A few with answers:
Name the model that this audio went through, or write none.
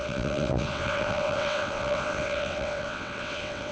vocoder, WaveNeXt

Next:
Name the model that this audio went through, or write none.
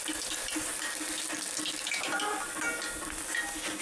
none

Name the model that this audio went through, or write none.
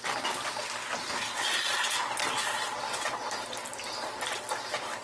none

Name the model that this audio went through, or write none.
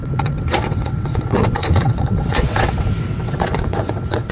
vocoder, WaveNeXt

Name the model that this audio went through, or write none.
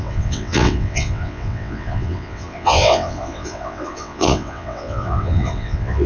vocoder, WaveNeXt